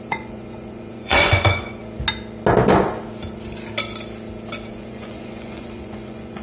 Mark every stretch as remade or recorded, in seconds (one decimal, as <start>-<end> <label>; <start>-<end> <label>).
0.0-1.8 remade; 1.8-4.7 recorded; 4.7-6.4 remade

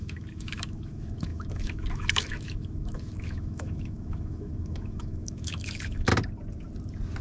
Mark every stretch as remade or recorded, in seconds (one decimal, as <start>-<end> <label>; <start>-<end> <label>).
0.0-6.1 remade; 6.1-7.2 recorded

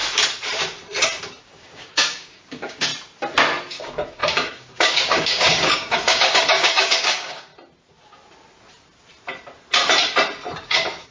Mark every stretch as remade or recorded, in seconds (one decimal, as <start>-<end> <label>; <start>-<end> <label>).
0.0-1.4 recorded; 1.4-2.9 remade; 2.9-3.7 recorded; 3.7-7.5 remade; 7.5-10.6 recorded; 10.6-11.1 remade

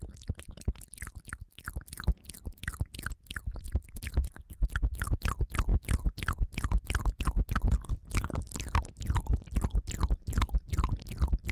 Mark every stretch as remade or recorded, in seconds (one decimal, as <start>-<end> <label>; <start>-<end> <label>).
0.0-11.5 recorded

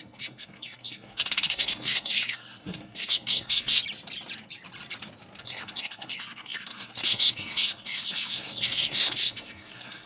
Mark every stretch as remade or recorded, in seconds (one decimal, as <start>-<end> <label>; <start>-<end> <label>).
0.0-3.8 remade; 3.8-5.4 recorded; 5.4-10.1 remade

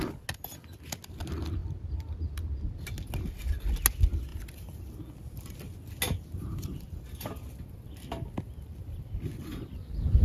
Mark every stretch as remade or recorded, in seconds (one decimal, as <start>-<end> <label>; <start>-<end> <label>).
0.0-10.2 recorded

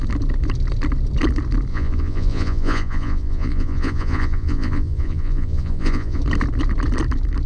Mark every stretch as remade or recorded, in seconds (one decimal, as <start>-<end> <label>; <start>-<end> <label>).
0.0-1.7 recorded; 1.7-6.2 remade; 6.2-7.5 recorded